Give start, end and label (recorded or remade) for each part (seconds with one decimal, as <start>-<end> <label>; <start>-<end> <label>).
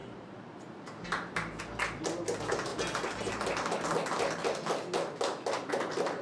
0.0-1.6 remade; 1.6-6.2 recorded